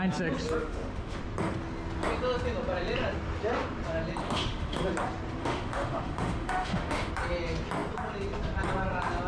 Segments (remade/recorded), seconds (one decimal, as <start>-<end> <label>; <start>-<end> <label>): 0.0-0.6 recorded; 0.6-1.2 remade; 1.2-4.2 recorded; 4.2-4.8 remade; 4.8-5.4 recorded; 5.4-7.1 remade; 7.1-9.3 recorded